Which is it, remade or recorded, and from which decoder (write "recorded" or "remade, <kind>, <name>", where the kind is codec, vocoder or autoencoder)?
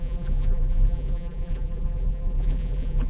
remade, vocoder, BigVGAN v2